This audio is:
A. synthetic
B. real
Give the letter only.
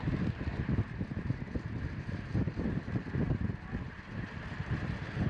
A